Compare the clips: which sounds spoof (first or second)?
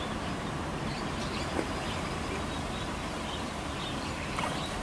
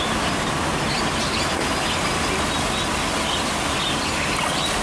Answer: first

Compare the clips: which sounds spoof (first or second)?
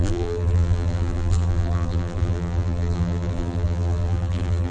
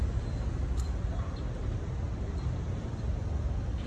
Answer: first